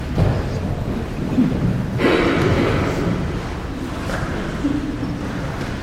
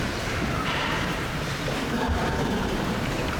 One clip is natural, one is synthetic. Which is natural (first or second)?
first